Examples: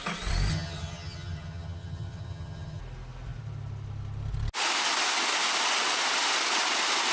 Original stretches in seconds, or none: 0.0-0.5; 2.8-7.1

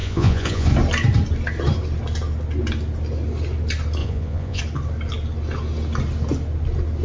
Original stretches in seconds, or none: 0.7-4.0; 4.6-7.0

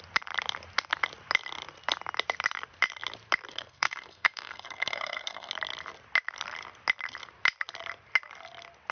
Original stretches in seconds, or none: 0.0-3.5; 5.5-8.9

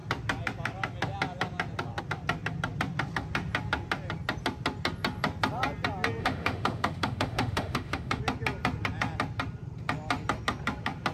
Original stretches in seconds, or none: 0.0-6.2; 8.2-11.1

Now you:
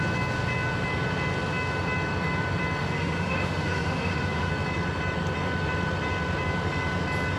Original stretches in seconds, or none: 0.0-2.8; 4.5-7.4